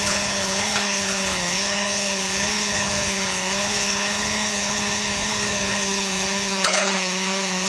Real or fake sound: fake